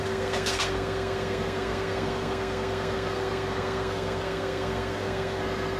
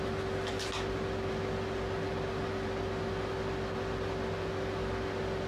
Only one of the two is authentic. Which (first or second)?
second